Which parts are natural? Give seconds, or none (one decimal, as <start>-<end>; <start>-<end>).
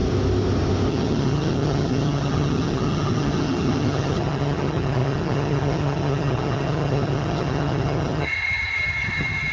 0.0-0.9